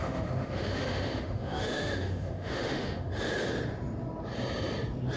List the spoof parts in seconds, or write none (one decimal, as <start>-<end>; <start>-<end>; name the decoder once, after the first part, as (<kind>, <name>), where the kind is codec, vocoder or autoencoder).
0.0-3.1 (autoencoder, DAC-VAE)